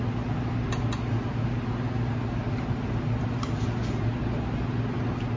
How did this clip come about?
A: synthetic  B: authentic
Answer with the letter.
B